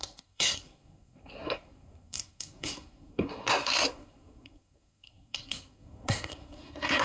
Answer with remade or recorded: remade